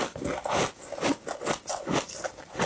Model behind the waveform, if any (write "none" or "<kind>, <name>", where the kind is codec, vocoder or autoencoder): none